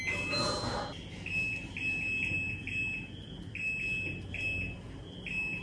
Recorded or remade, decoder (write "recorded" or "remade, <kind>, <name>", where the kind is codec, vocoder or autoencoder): recorded